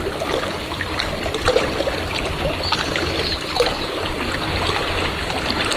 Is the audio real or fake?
real